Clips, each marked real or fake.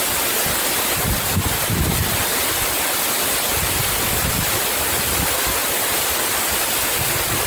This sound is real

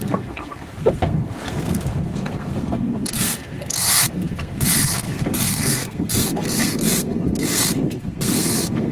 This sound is fake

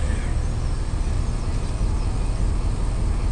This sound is real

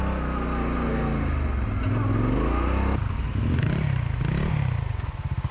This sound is real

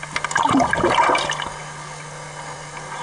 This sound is real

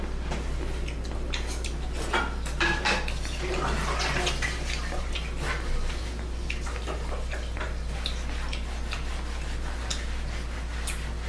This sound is real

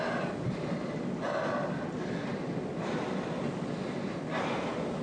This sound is real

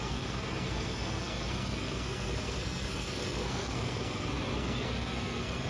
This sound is fake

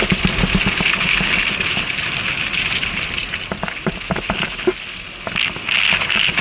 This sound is real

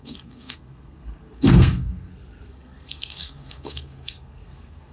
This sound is fake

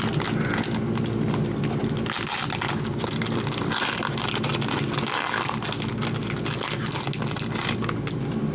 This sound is real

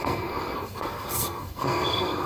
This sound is fake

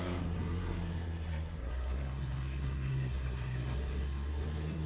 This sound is fake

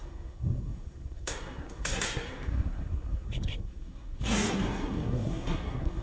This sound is fake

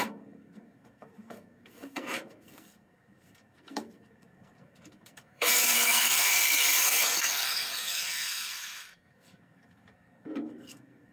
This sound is fake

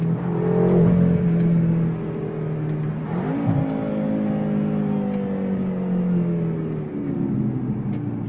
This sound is real